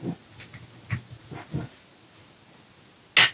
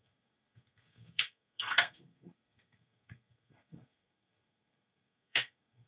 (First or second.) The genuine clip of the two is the first